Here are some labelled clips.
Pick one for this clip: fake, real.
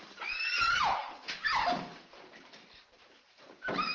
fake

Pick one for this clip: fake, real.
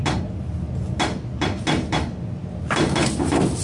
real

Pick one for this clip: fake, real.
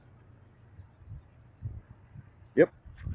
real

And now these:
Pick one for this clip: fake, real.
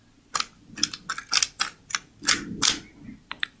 real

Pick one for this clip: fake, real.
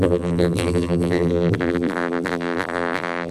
fake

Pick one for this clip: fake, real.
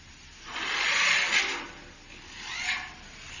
real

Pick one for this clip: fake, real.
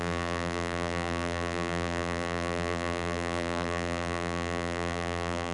fake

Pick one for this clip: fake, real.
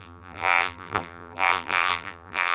fake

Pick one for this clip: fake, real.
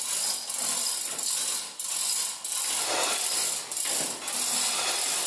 real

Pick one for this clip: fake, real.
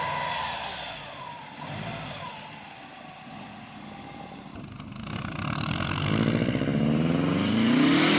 fake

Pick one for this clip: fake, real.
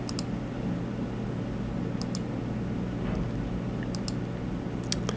real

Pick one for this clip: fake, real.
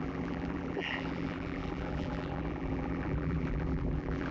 fake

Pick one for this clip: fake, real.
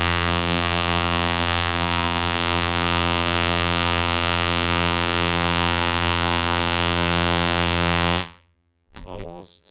fake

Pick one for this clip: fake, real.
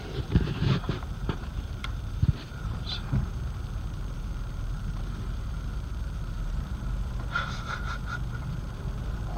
fake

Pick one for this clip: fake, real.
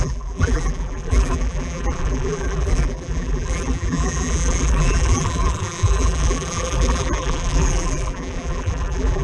fake